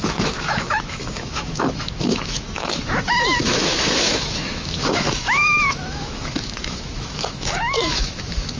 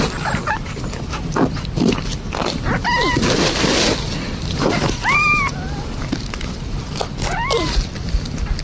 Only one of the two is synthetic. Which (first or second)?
first